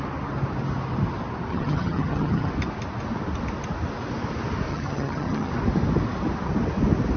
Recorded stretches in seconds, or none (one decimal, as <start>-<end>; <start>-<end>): 0.0-1.5; 2.5-4.7; 5.5-7.2